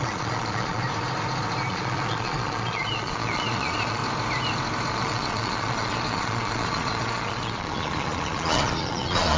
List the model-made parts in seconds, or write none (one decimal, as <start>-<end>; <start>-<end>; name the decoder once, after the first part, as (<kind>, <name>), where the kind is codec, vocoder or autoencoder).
0.0-0.8 (vocoder, Vocos); 1.7-4.0; 4.9-9.4